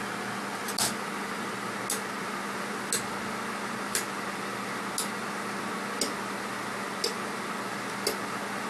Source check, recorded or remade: recorded